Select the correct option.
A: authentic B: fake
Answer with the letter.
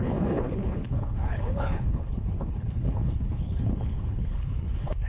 B